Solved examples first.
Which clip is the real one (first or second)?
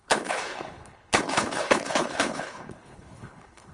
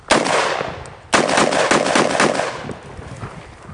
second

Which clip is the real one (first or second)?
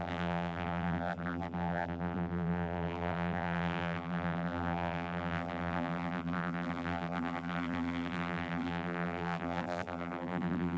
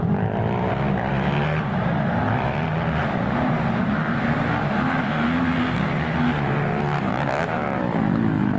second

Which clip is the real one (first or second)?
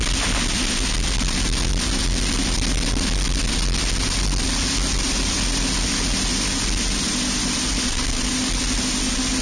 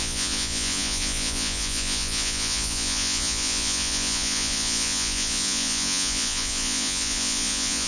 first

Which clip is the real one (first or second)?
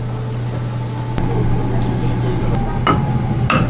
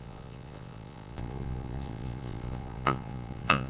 first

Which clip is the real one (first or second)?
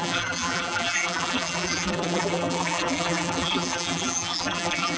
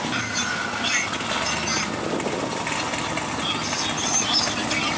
second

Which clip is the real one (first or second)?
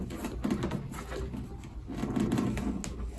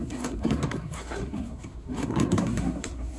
first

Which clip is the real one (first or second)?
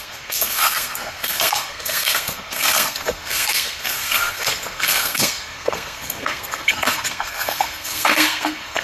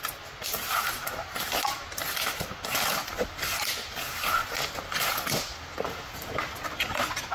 second